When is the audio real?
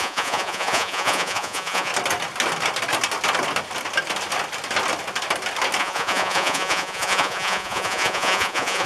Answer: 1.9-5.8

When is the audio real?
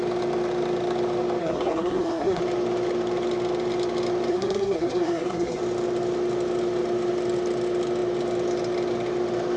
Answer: 0.0-1.4; 2.4-4.3; 5.6-9.6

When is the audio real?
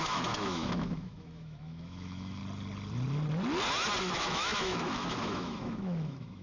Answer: 2.4-4.1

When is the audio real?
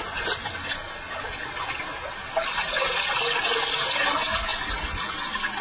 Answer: 0.0-5.6